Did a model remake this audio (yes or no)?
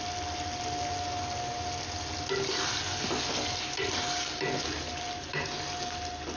no